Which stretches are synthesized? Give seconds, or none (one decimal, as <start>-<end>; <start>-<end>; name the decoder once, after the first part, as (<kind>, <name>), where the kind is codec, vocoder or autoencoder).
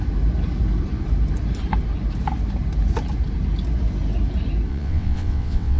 4.7-5.8 (vocoder, WaveNeXt)